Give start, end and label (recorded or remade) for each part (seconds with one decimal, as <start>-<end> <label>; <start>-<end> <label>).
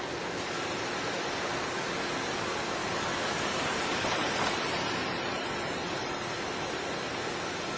0.0-7.8 recorded